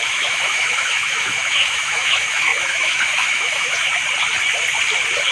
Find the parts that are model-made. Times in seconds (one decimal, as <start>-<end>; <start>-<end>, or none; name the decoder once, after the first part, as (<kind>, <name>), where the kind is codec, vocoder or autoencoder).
0.0-3.8 (autoencoder, DAC-VAE)